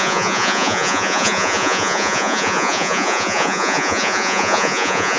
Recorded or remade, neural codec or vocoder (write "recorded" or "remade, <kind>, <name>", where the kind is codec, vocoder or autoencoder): remade, vocoder, Vocos